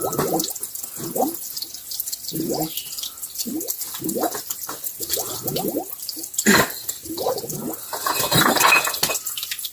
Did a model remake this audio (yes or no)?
no